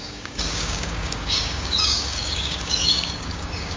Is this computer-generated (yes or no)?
yes